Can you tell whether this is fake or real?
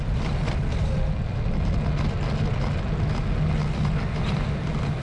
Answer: real